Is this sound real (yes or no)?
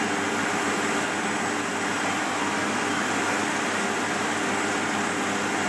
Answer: yes